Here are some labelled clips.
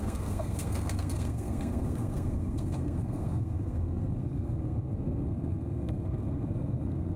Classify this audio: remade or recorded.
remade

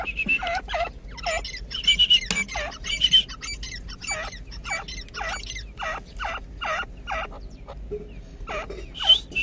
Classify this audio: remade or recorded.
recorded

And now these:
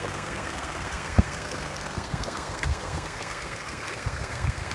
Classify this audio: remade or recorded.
remade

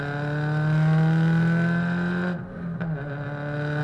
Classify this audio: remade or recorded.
recorded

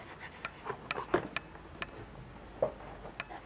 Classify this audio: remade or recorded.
recorded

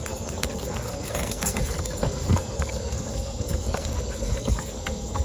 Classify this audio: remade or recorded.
remade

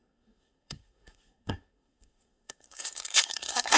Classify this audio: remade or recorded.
remade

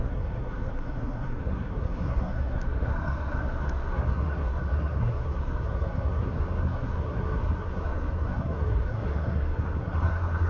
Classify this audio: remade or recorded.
remade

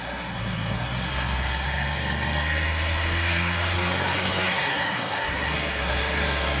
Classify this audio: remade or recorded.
remade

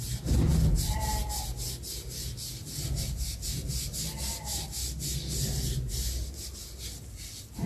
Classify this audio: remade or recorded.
recorded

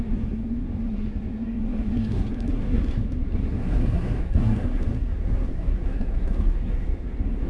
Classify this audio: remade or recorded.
remade